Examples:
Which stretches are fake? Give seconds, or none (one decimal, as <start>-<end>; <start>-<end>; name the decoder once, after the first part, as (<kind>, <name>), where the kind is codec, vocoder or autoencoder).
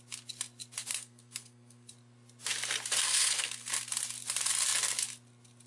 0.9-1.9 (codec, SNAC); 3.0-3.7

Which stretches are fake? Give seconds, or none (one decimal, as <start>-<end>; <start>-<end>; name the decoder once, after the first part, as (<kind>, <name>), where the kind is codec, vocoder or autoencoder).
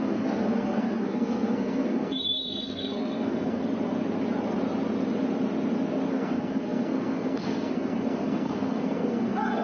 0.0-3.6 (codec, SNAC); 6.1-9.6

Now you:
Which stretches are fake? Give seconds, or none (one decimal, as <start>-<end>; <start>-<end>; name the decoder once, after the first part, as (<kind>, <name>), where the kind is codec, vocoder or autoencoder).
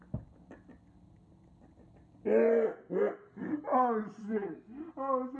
4.2-4.9 (codec, SNAC)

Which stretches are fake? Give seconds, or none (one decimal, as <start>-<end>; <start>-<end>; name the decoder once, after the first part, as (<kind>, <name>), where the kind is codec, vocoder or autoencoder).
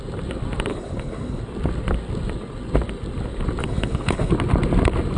0.7-1.4 (codec, HILCodec); 3.6-4.3